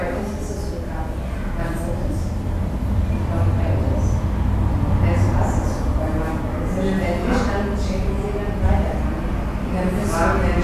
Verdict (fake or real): real